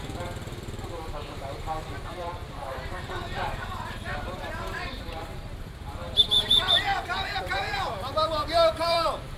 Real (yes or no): no